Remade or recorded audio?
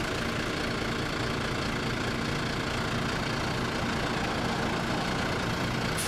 recorded